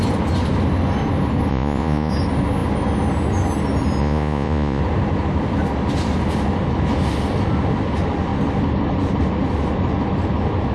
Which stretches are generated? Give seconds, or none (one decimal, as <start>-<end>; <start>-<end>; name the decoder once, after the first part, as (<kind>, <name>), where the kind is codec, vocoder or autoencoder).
1.5-2.1 (vocoder, Vocos); 4.0-4.8